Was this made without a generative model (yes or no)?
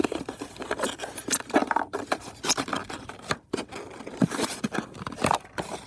no